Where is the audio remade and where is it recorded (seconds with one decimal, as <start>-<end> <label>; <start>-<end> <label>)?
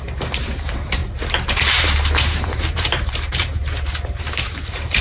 0.0-1.0 remade; 1.0-1.5 recorded; 1.5-5.0 remade